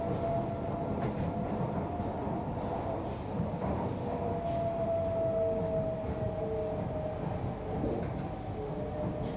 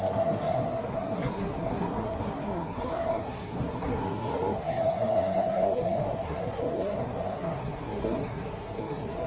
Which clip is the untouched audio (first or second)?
first